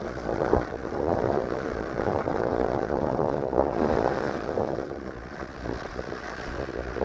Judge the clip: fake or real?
fake